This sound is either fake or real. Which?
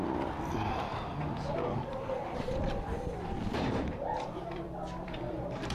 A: fake